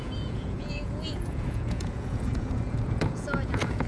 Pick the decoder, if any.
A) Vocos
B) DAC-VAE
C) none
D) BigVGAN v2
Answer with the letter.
A